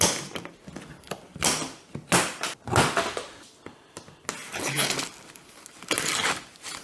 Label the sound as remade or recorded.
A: recorded